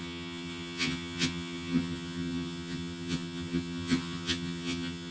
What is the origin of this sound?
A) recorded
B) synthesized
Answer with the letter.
B